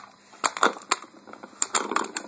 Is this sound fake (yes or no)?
no